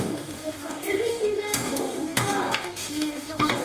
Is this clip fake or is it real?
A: fake